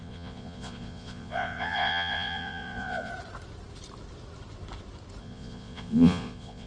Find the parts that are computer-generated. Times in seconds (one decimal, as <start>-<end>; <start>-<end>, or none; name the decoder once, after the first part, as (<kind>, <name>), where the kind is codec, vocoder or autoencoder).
0.0-3.1 (vocoder, Vocos); 5.2-6.7